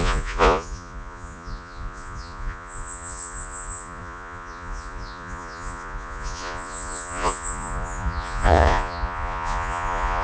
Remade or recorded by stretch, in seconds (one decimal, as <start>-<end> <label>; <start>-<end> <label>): 0.0-10.2 remade